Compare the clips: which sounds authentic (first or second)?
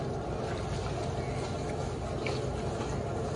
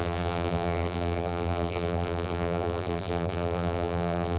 first